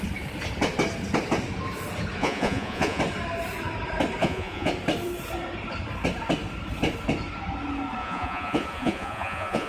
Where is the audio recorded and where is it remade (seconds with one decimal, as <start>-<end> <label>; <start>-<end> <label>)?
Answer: 0.0-2.2 recorded; 2.2-3.0 remade; 3.0-4.2 recorded; 4.2-4.7 remade; 4.7-8.0 recorded; 8.0-9.7 remade